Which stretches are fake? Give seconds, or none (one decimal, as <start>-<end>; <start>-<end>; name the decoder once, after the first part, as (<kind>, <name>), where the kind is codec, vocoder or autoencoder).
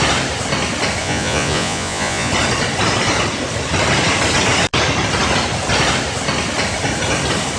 1.0-2.3 (vocoder, Vocos)